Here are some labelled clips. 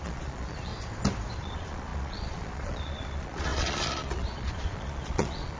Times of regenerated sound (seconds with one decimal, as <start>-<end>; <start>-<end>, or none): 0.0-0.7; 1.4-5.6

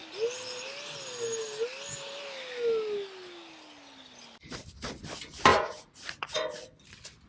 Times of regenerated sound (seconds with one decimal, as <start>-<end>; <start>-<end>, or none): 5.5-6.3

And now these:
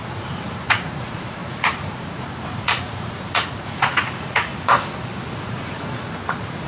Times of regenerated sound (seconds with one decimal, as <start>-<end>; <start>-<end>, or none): 0.0-4.5; 5.3-6.7

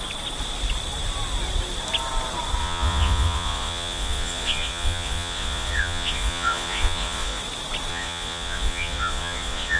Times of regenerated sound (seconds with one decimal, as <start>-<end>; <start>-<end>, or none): 2.6-7.4; 7.9-9.8

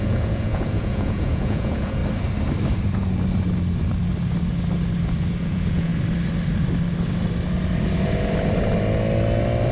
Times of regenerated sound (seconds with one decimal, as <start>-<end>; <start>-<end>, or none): 0.0-2.0; 5.4-5.9

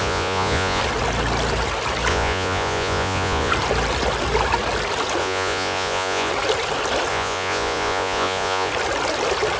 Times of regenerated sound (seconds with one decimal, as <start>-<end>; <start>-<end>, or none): 0.0-0.8; 2.1-3.5; 5.2-6.3; 7.1-8.7

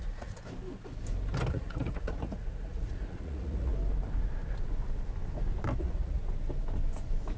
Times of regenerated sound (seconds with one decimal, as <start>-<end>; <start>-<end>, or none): 0.0-0.4; 1.5-3.7; 5.8-6.2